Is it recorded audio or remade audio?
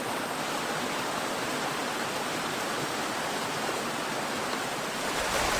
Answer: recorded